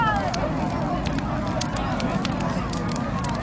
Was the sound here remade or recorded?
recorded